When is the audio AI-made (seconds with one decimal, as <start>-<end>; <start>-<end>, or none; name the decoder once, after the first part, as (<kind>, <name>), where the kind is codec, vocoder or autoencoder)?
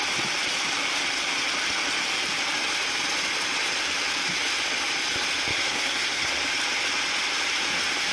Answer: 5.5-6.3 (codec, SNAC)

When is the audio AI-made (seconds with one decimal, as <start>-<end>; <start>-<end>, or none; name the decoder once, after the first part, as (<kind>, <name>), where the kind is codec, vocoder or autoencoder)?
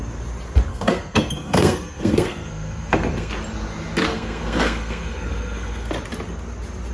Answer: 0.7-3.3 (codec, SNAC); 4.1-5.9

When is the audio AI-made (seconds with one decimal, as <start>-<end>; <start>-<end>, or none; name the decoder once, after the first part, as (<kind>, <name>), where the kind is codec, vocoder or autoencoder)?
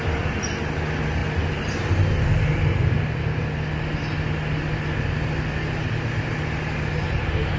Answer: none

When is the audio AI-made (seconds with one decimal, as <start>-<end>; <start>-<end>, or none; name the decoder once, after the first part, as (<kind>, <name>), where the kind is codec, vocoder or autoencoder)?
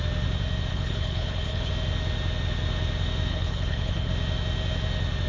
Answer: 0.7-1.7 (codec, HILCodec); 3.3-4.1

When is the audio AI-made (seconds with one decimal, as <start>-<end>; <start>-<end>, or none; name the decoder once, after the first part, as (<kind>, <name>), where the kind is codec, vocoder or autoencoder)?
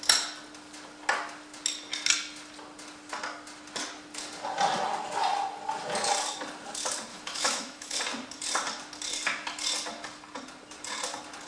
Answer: 7.1-8.0 (autoencoder, DAC-VAE)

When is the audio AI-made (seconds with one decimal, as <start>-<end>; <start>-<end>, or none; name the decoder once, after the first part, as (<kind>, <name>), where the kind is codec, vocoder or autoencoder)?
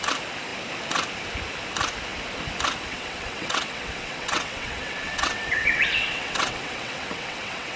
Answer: 2.9-7.8 (vocoder, WaveNeXt)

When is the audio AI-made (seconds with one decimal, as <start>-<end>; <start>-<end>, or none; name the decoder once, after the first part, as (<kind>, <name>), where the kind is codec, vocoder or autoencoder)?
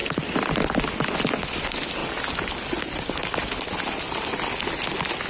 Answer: none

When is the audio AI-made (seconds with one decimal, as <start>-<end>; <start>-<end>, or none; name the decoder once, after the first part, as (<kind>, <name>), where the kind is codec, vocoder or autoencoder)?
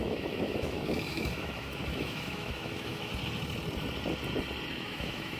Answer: 0.0-3.1 (autoencoder, DAC-VAE); 4.7-5.4